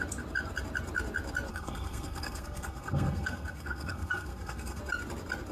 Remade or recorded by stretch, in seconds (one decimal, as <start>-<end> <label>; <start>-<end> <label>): 0.0-1.5 recorded; 1.5-4.8 remade; 4.8-5.5 recorded